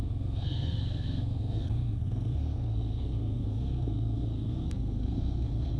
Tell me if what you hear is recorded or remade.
remade